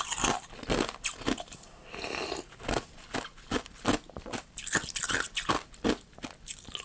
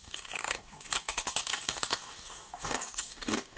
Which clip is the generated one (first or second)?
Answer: second